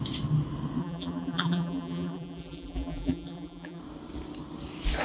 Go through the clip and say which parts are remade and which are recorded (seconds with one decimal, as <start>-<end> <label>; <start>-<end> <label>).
0.0-0.8 recorded; 0.8-3.8 remade; 3.8-5.0 recorded